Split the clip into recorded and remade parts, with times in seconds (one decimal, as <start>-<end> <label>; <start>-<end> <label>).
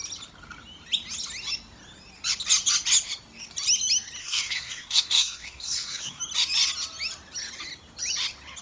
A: 0.0-4.2 recorded; 4.2-6.2 remade; 6.2-8.6 recorded